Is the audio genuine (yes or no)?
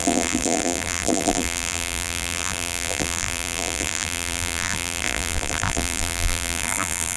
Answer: no